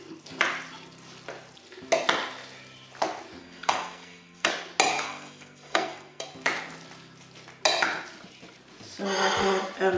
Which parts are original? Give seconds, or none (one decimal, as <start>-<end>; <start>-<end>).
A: 0.0-3.4; 4.5-4.9; 6.3-10.0